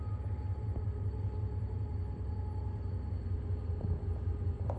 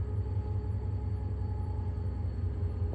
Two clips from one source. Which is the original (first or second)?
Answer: second